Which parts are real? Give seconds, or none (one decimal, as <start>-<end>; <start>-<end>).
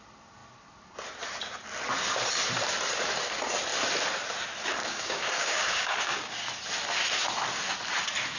0.0-4.8; 6.4-8.4